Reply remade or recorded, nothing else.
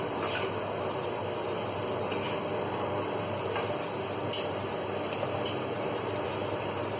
recorded